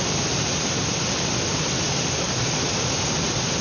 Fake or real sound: fake